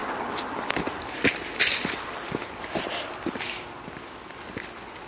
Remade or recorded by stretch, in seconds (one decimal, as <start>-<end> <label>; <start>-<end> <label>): 0.0-5.1 recorded